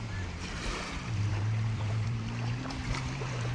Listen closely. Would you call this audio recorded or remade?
remade